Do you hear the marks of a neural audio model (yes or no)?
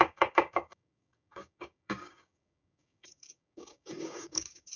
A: yes